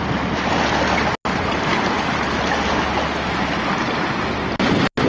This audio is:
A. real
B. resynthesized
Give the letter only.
A